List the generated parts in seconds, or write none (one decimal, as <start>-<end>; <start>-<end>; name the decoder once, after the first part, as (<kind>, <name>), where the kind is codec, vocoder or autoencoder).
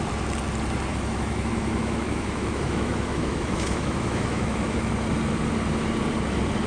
0.9-4.9 (autoencoder, DAC-VAE)